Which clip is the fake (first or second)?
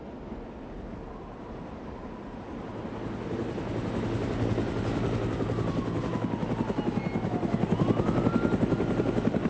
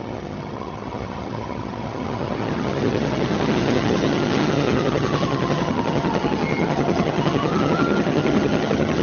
second